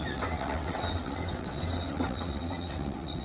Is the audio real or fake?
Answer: fake